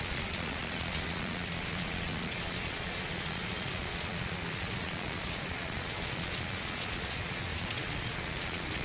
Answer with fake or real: fake